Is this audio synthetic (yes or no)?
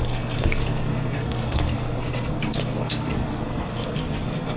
yes